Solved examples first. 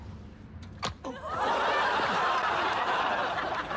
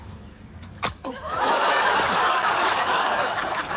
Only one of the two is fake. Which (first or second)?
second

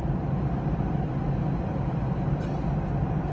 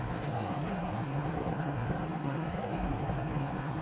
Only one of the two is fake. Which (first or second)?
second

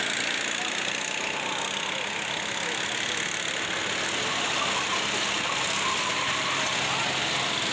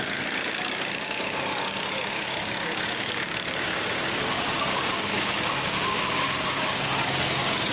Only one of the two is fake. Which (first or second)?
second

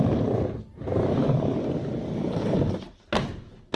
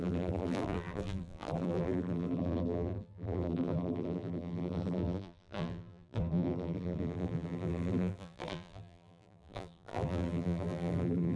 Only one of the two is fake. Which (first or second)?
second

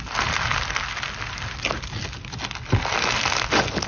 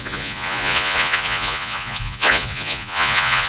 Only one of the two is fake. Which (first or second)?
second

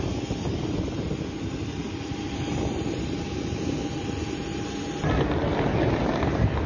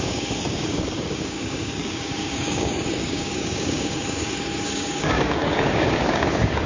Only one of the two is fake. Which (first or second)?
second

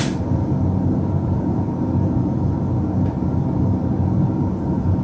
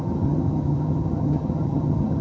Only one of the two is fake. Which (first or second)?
second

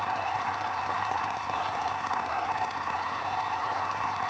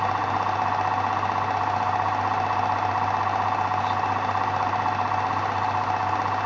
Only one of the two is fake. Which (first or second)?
first